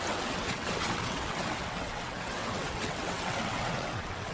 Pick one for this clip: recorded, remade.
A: remade